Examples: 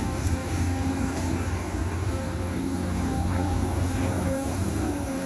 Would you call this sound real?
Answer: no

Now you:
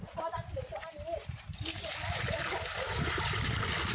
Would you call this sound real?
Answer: yes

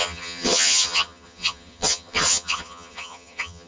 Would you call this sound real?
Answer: no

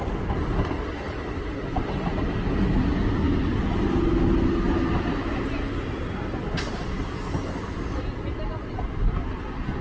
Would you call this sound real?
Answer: yes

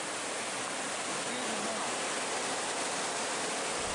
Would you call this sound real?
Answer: yes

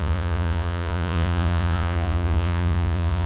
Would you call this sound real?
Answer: no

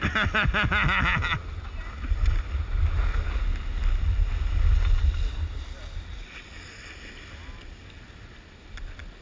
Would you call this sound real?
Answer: yes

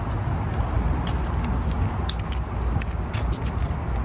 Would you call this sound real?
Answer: yes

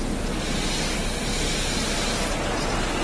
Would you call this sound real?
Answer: yes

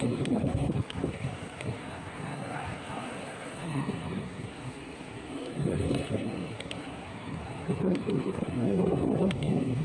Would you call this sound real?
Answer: no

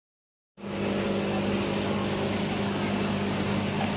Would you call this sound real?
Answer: yes